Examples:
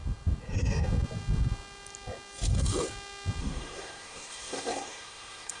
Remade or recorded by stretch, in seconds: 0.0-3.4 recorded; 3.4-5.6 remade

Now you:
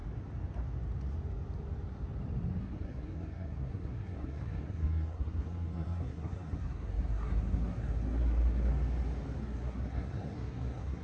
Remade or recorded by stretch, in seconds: 0.0-2.6 recorded; 2.6-8.7 remade; 8.7-9.4 recorded; 9.4-11.0 remade

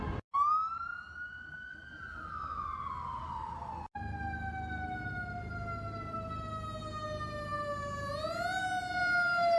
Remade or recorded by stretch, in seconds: 0.0-9.6 recorded